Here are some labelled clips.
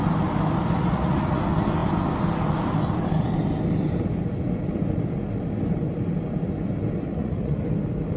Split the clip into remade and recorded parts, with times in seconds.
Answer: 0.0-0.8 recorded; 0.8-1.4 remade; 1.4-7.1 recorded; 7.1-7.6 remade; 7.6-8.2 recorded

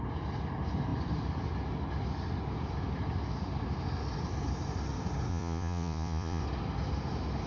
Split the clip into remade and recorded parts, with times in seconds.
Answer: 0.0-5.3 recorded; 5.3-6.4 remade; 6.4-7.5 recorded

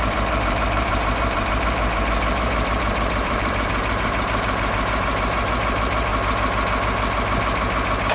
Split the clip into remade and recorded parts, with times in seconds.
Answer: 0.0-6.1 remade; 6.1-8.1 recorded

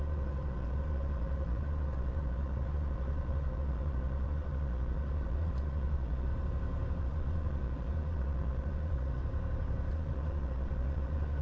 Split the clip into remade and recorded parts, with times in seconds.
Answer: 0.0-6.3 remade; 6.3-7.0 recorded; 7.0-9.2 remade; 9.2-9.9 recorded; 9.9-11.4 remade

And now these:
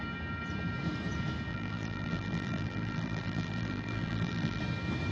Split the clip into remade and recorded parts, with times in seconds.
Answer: 0.0-1.5 recorded; 1.5-4.6 remade; 4.6-5.1 recorded